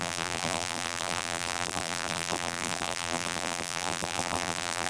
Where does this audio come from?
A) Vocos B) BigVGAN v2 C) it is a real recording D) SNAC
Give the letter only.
B